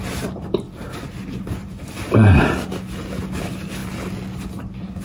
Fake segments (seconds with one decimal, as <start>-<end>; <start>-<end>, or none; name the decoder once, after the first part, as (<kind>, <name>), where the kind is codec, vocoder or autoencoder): 1.6-2.4 (vocoder, BigVGAN v2)